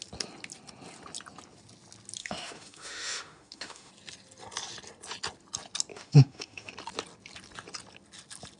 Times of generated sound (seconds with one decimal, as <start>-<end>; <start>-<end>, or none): 2.2-3.9; 5.9-6.7